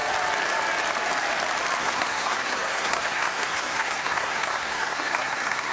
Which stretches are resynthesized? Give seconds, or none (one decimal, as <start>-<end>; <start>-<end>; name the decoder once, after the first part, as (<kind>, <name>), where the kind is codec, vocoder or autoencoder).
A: 1.8-5.7 (codec, SNAC)